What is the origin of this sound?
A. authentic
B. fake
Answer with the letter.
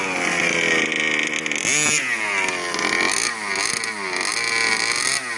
A